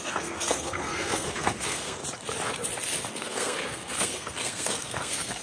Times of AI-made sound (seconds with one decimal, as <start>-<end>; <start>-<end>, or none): 0.0-2.0; 3.1-5.4